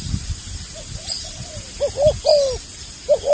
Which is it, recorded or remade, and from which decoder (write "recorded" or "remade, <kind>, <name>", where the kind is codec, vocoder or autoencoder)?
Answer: recorded